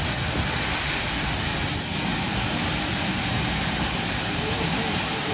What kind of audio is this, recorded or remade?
recorded